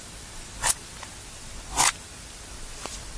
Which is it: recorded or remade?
recorded